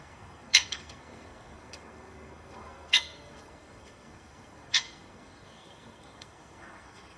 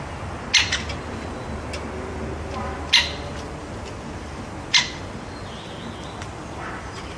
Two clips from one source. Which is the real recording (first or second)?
second